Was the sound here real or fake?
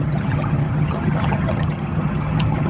fake